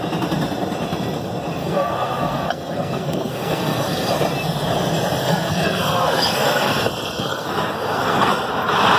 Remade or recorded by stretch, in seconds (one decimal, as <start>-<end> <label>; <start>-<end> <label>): 0.0-1.6 recorded; 1.6-4.1 remade; 4.1-5.2 recorded; 5.2-8.5 remade; 8.5-9.0 recorded